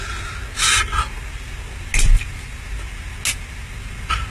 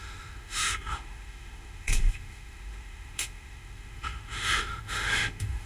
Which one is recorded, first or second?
first